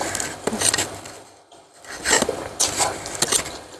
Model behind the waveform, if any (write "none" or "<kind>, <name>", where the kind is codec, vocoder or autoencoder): none